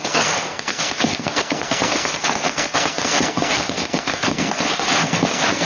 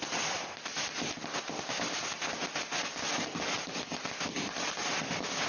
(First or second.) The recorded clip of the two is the second